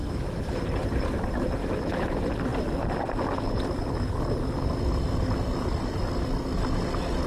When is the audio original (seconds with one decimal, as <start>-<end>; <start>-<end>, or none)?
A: 0.6-1.6; 2.1-7.3